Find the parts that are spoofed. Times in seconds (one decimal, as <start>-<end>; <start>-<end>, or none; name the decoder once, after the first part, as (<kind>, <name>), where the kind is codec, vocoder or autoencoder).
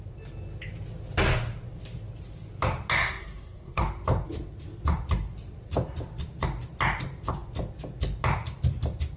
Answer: 3.2-3.8 (codec, SNAC)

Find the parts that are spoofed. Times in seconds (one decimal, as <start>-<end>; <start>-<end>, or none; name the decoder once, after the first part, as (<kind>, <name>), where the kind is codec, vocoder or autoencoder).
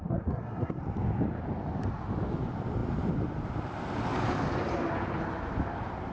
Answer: 0.0-0.8 (codec, SNAC)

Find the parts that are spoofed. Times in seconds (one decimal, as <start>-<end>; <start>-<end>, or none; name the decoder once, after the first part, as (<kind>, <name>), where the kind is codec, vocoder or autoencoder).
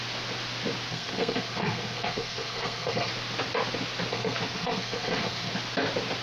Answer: 0.9-3.1 (codec, SNAC); 4.1-5.5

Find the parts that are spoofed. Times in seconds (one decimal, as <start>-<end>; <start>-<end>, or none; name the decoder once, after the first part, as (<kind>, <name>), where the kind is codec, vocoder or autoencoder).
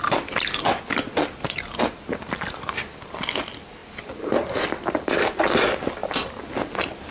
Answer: none